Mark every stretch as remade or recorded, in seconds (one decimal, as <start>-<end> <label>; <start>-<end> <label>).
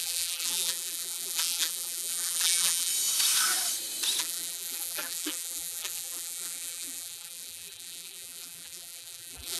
0.0-2.9 remade; 2.9-4.2 recorded; 4.2-9.6 remade